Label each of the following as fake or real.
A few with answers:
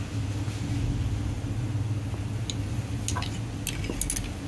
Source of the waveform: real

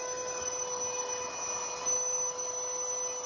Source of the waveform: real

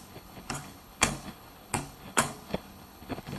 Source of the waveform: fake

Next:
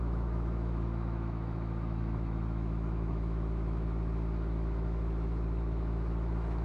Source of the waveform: fake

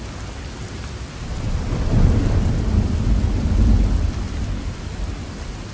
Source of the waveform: real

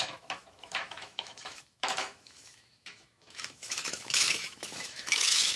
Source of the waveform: fake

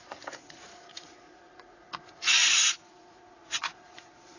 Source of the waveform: fake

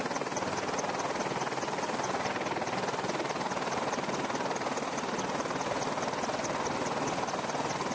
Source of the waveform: real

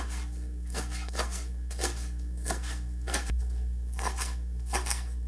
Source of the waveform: fake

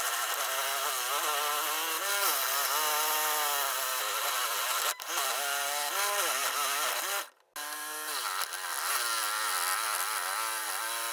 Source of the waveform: real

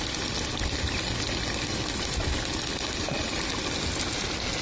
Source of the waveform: real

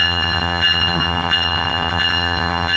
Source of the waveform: fake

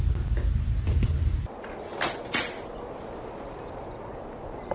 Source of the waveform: real